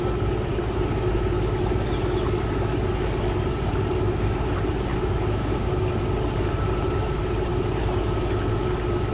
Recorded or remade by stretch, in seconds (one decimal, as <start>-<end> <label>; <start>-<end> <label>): 0.0-4.9 recorded; 4.9-5.8 remade; 5.8-9.1 recorded